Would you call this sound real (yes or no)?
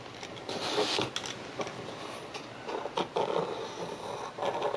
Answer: yes